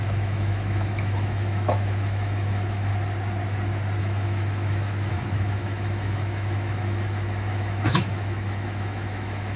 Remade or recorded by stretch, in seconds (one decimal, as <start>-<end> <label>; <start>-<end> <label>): 0.0-2.9 remade; 2.9-4.0 recorded; 4.0-9.6 remade